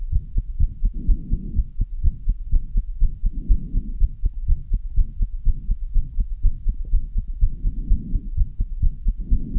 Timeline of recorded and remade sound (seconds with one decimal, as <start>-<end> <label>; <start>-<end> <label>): 0.0-9.6 recorded